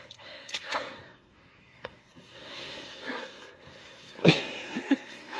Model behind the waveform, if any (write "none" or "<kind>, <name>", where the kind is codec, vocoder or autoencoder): codec, SNAC